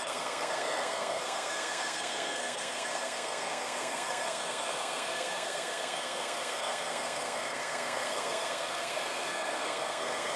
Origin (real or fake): fake